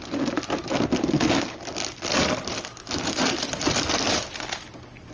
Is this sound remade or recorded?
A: recorded